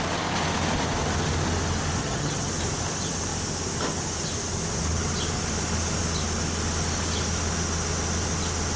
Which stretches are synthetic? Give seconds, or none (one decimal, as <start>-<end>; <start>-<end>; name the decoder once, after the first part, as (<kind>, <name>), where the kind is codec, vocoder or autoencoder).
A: 2.0-2.5 (vocoder, HiFi-GAN)